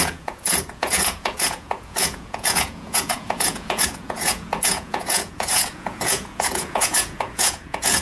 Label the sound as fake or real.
fake